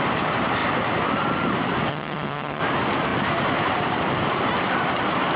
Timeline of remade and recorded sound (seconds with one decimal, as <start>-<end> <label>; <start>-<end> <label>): 0.0-1.9 recorded; 1.9-2.6 remade; 2.6-5.4 recorded

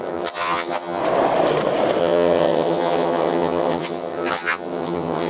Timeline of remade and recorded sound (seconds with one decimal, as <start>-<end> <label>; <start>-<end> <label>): 0.0-1.0 remade; 1.0-2.0 recorded; 2.0-5.3 remade

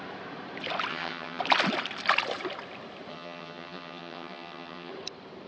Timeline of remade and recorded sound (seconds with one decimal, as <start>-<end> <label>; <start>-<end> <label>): 0.0-0.9 recorded; 0.9-1.4 remade; 1.4-3.1 recorded; 3.1-4.9 remade; 4.9-5.5 recorded

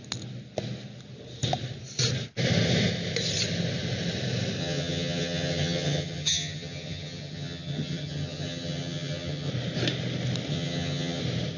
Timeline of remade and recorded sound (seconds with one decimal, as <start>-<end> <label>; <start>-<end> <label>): 0.0-4.6 recorded; 4.6-9.5 remade; 9.5-10.5 recorded; 10.5-11.2 remade; 11.2-11.6 recorded

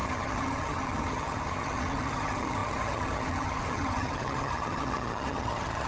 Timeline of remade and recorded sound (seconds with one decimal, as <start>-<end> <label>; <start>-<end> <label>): 0.0-5.9 remade